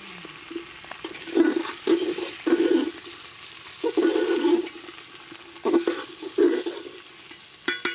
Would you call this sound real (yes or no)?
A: yes